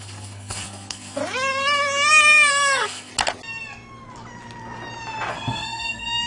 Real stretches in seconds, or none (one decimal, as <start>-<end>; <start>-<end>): 1.2-2.5; 3.1-5.3

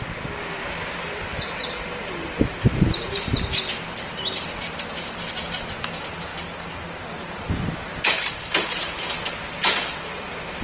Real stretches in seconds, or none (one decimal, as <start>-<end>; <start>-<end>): 0.0-10.6

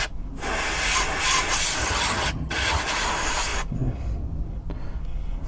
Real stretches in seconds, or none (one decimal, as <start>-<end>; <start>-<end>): 0.0-1.8; 2.8-5.5